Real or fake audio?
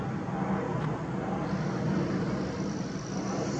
real